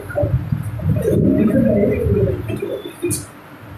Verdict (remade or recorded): recorded